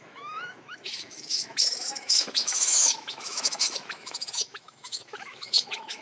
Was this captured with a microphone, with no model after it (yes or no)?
no